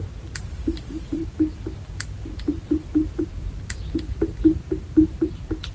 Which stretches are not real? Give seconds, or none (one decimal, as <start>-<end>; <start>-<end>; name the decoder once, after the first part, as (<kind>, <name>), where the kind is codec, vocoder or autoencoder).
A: none